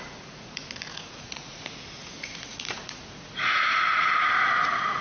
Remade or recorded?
remade